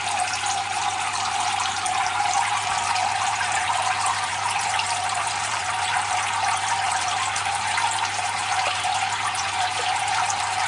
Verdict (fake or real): fake